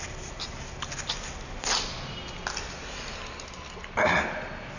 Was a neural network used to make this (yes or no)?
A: no